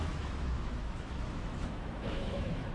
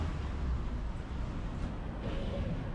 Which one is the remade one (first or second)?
first